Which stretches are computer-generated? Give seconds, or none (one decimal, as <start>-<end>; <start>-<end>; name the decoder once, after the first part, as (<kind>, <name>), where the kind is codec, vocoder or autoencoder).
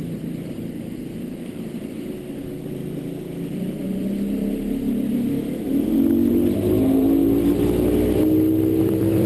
0.0-2.8 (vocoder, BigVGAN v2); 6.3-7.2; 8.8-9.3